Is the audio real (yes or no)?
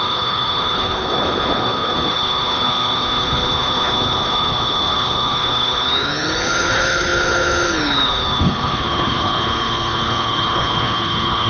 no